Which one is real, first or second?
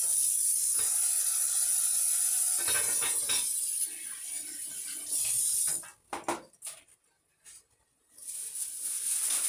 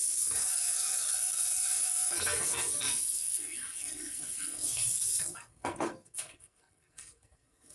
first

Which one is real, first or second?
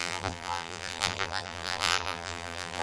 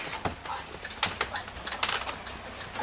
second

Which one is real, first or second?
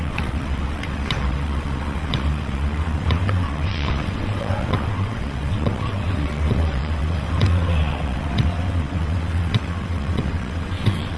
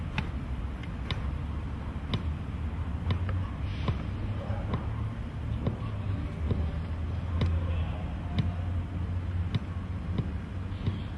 second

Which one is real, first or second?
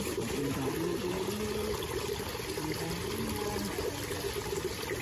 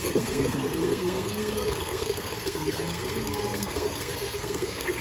first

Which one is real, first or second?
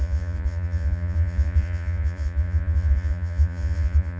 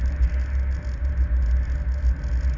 second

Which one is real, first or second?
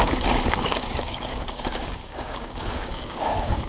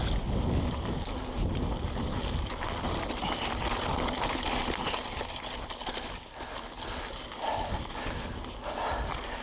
second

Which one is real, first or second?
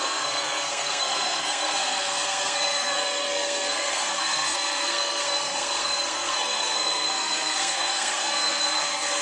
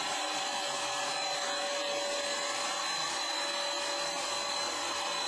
second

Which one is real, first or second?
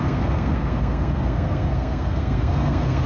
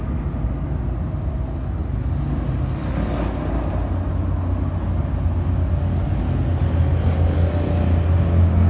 second